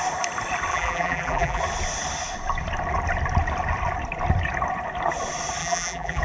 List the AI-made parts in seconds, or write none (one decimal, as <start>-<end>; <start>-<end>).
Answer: 0.7-1.6; 5.6-6.2